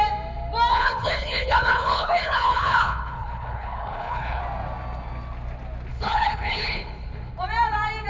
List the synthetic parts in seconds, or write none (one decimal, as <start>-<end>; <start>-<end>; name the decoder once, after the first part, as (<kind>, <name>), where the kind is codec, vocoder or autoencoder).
0.7-4.4 (codec, HILCodec); 5.9-7.3